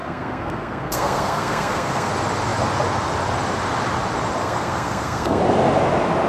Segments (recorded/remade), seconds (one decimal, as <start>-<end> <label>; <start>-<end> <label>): 0.0-2.1 remade; 2.1-4.4 recorded; 4.4-5.4 remade; 5.4-6.3 recorded